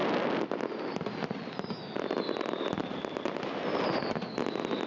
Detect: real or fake real